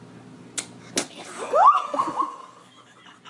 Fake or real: real